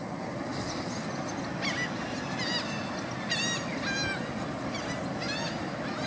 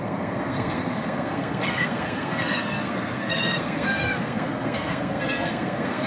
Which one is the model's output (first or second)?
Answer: second